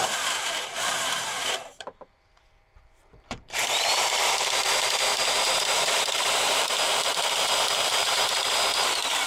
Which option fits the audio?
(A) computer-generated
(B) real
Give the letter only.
A